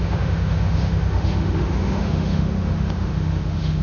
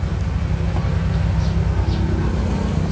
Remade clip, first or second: first